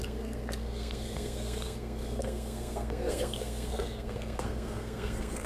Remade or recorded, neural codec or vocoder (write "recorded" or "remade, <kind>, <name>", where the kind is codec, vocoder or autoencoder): remade, codec, SNAC